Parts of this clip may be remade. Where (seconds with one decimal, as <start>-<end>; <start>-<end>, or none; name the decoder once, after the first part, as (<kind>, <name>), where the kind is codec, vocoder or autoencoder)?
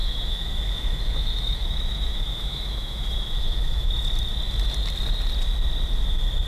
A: 0.0-3.9 (autoencoder, DAC-VAE)